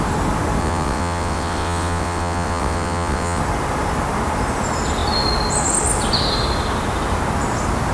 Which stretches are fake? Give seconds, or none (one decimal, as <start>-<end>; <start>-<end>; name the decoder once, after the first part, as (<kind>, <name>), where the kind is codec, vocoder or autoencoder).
0.6-3.4 (vocoder, WaveNeXt)